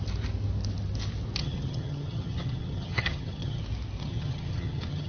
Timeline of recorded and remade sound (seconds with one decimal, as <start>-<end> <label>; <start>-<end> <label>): 0.0-1.4 recorded; 1.4-3.6 remade; 3.6-4.0 recorded; 4.0-5.1 remade